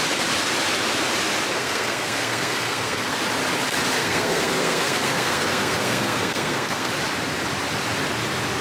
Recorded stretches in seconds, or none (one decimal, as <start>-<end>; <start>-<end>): 0.0-1.5; 3.2-4.0; 6.9-8.6